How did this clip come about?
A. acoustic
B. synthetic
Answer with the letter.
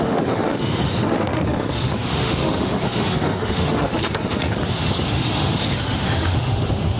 B